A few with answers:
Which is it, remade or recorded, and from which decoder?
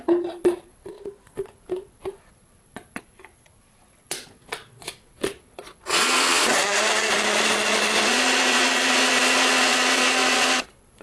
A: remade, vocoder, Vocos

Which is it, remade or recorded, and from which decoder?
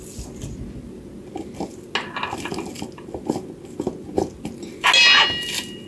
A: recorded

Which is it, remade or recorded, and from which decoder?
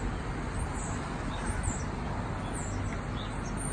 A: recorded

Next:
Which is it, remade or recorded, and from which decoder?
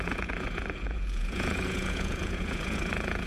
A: remade, vocoder, Vocos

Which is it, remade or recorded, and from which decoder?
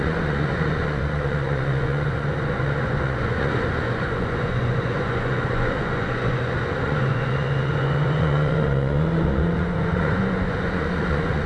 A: remade, vocoder, Vocos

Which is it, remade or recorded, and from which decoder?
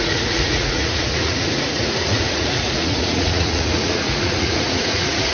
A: remade, vocoder, Vocos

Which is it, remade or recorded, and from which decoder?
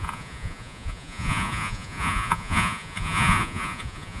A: remade, vocoder, Vocos